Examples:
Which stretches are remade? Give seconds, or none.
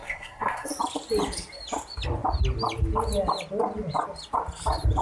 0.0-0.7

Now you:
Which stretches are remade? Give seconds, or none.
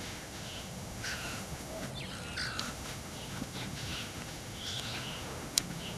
0.0-1.9; 2.6-6.0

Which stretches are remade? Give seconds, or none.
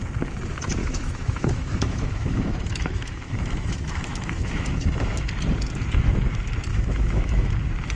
0.8-5.3; 6.7-7.5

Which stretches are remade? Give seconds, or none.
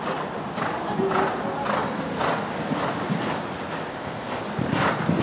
3.9-4.4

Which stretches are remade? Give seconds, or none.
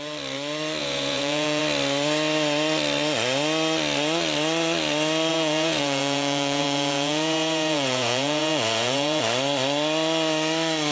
0.8-1.6; 5.3-9.2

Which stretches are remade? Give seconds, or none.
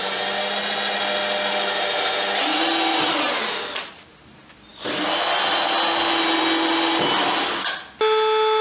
none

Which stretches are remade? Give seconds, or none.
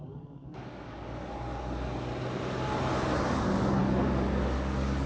0.0-2.1; 3.2-5.1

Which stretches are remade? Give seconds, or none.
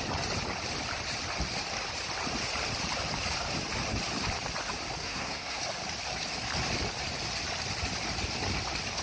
5.0-5.6